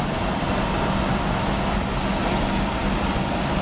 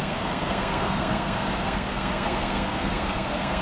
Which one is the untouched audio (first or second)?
first